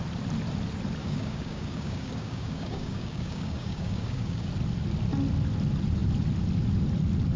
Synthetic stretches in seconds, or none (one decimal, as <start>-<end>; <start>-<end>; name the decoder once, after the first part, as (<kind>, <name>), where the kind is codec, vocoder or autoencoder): 1.0-4.5 (codec, DAC)

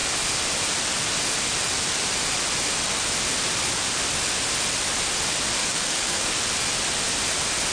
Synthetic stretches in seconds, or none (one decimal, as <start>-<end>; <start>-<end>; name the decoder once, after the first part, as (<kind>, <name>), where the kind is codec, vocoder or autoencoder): 5.6-6.3 (codec, DAC)

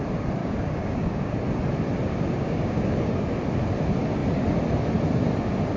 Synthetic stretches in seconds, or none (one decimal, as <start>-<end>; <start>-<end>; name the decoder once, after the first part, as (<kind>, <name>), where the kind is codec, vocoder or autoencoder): 0.4-1.4 (codec, DAC); 2.1-3.3

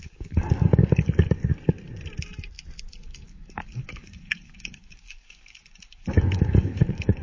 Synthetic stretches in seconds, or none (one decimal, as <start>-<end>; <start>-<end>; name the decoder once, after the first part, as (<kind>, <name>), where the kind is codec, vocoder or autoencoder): 0.0-1.5 (codec, DAC); 2.9-7.2